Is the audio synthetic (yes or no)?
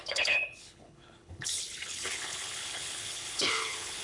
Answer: yes